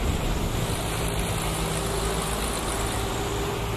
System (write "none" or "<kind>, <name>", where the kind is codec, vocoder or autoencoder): none